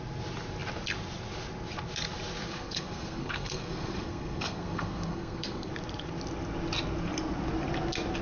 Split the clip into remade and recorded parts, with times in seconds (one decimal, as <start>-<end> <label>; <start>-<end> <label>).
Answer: 0.0-2.5 recorded; 2.5-5.7 remade; 5.7-8.2 recorded